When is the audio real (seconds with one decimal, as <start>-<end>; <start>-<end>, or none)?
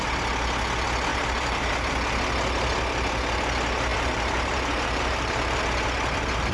0.0-1.1; 1.7-3.9; 5.6-6.5